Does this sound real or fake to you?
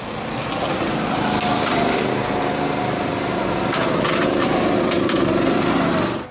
real